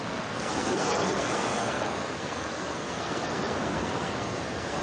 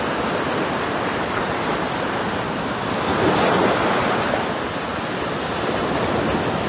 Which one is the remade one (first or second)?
first